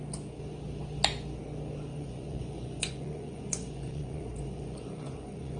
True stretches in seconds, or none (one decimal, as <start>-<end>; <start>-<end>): 0.0-1.9